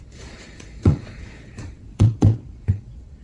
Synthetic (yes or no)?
yes